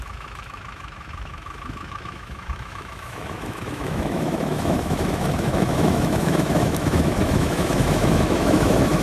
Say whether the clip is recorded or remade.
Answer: remade